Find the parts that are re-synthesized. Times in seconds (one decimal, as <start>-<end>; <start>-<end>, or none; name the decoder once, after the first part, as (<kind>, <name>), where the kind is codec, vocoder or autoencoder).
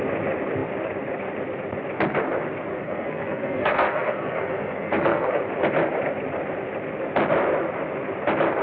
2.7-5.4 (codec, SNAC)